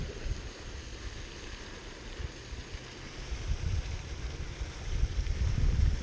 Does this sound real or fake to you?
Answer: fake